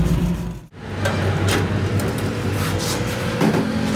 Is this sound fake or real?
real